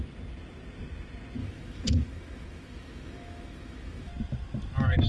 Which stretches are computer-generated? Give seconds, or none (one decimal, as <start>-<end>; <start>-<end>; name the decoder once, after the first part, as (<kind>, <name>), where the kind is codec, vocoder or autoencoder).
1.4-4.1 (autoencoder, DAC-VAE)